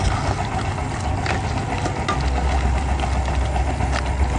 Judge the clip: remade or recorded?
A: recorded